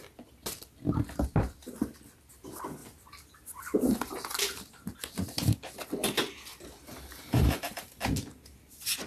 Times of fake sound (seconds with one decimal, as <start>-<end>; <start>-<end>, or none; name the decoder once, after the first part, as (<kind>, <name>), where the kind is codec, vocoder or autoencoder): 6.5-8.0 (vocoder, BigVGAN v2)